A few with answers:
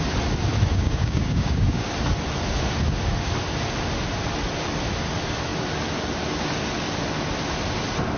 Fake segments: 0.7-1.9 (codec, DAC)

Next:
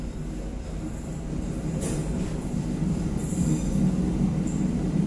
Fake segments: 0.0-5.1 (vocoder, BigVGAN v2)

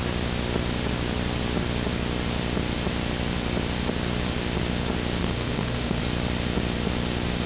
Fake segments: 5.2-6.0 (autoencoder, DAC-VAE)

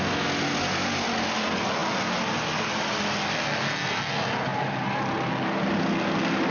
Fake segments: none